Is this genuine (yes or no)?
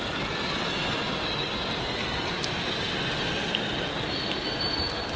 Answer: yes